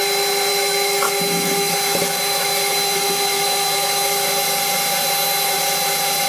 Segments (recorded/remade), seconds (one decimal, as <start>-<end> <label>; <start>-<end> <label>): 0.0-0.5 recorded; 0.5-4.3 remade; 4.3-6.3 recorded